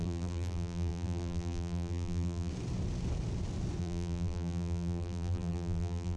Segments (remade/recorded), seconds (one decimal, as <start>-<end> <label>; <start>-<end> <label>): 0.0-2.5 remade; 2.5-3.8 recorded; 3.8-6.2 remade